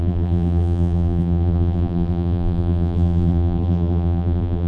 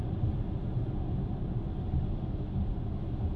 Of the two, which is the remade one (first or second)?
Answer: first